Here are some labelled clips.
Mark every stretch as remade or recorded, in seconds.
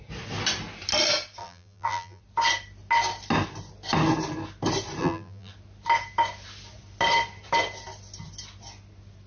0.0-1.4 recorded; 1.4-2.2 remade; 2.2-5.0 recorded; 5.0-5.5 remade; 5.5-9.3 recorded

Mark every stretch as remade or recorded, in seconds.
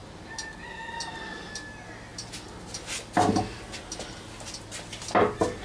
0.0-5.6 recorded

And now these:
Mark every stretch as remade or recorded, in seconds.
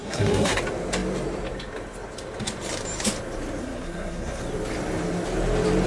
0.0-0.6 remade; 0.6-3.6 recorded; 3.6-4.4 remade; 4.4-5.9 recorded